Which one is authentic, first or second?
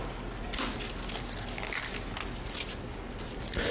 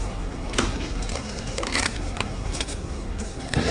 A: first